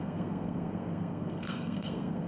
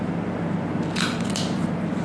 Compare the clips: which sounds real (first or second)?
second